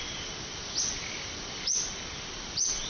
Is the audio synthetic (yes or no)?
no